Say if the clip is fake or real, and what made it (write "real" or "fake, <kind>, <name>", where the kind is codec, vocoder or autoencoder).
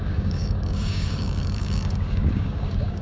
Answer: fake, codec, DAC